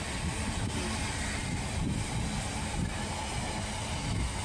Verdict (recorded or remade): recorded